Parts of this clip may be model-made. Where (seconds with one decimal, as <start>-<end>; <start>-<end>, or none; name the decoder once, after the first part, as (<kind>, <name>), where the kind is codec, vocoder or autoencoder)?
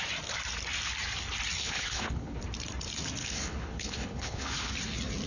1.6-2.4 (codec, HILCodec); 3.2-4.7